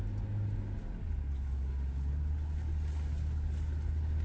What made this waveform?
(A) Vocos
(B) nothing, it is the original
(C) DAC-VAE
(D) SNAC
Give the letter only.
B